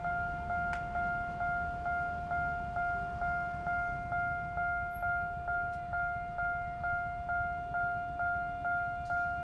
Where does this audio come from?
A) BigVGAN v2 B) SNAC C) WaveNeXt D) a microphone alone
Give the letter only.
D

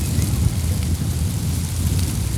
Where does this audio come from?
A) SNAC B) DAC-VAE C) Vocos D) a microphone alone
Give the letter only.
D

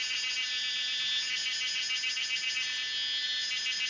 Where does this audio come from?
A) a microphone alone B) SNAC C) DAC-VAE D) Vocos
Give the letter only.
A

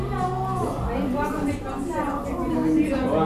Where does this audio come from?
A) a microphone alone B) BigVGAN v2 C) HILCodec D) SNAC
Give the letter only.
A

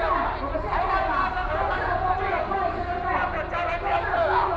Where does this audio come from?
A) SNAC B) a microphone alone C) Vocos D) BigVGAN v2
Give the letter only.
B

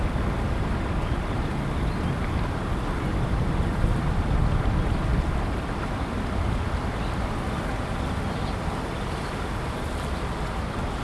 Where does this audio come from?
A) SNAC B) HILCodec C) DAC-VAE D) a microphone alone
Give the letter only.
D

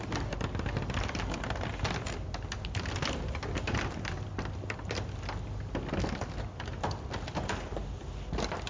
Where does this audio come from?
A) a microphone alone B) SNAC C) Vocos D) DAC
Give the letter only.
A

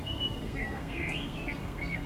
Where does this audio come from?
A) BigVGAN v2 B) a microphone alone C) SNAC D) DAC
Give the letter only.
C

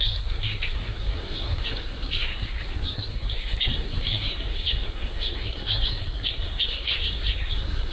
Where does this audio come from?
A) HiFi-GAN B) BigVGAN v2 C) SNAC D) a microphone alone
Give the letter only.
C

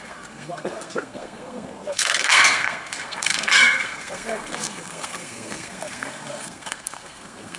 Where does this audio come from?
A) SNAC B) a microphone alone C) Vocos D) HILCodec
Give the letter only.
A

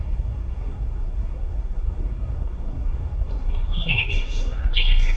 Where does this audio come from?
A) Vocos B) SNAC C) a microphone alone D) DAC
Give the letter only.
B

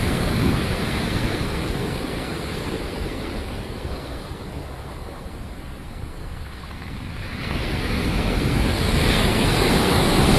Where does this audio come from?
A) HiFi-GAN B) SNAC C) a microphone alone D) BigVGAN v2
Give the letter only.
B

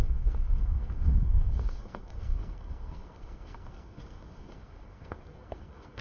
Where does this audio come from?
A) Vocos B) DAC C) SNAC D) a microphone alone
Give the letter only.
C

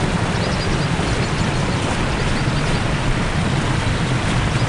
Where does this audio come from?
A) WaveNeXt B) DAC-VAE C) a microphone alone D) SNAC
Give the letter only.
C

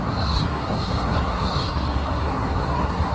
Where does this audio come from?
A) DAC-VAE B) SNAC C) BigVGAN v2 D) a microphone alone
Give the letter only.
B